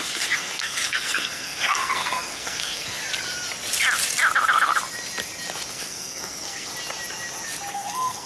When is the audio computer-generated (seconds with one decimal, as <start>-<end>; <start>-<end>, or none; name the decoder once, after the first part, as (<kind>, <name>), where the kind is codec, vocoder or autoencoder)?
0.0-3.0 (codec, SNAC); 5.7-6.7; 7.7-8.3